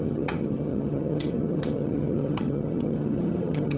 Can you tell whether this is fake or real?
fake